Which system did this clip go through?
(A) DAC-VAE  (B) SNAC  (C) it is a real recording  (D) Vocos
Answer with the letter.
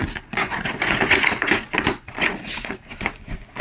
D